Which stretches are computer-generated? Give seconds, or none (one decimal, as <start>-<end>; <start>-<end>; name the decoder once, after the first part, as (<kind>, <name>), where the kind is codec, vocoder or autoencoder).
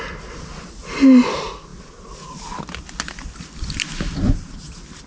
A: none